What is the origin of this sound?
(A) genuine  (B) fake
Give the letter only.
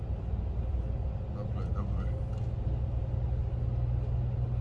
A